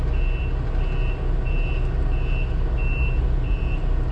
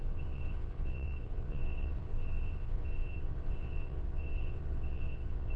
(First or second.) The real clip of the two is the first